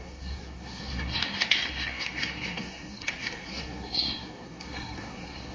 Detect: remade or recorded remade